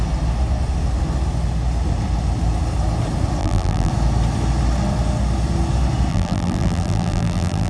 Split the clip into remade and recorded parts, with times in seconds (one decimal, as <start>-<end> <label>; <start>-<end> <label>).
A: 0.0-3.4 recorded; 3.4-3.9 remade; 3.9-6.1 recorded; 6.1-7.7 remade